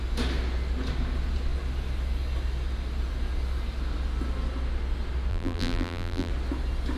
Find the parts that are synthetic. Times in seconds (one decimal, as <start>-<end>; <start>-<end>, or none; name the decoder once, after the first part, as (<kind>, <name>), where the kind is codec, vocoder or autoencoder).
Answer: 5.3-6.3 (vocoder, BigVGAN v2)